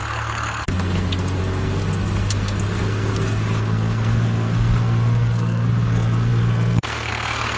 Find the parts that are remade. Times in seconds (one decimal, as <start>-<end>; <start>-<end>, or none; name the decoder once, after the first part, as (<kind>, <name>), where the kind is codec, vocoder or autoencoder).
0.0-7.6 (codec, SNAC)